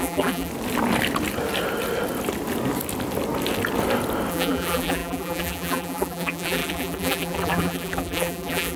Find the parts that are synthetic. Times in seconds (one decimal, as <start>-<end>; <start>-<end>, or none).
0.0-0.5; 4.3-8.8